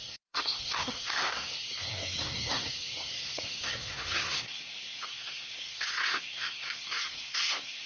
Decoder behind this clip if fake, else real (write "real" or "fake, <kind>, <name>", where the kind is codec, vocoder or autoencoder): fake, codec, SNAC